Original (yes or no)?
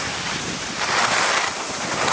yes